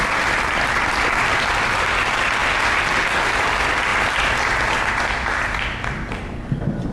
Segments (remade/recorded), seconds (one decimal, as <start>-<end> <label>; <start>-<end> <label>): 0.0-6.9 recorded